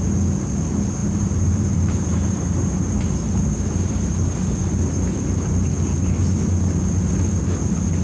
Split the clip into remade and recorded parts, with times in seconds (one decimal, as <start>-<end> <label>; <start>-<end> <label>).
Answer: 0.0-1.0 recorded; 1.0-4.0 remade; 4.0-8.0 recorded